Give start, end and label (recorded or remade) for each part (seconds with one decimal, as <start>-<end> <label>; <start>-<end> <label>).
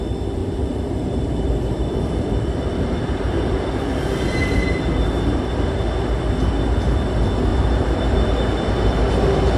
0.0-0.4 recorded; 0.4-5.5 remade; 5.5-7.5 recorded; 7.5-9.1 remade; 9.1-9.6 recorded